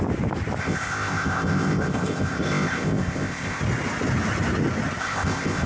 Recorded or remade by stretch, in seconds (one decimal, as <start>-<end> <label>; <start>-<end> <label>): 0.0-0.6 recorded; 0.6-3.6 remade; 3.6-5.0 recorded; 5.0-5.7 remade